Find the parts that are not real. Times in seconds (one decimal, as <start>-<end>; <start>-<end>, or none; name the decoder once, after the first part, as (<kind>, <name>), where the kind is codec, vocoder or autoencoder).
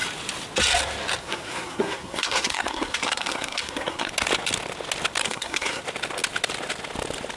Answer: 1.2-4.1 (codec, SNAC); 5.2-5.8